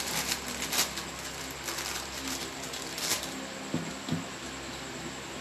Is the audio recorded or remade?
recorded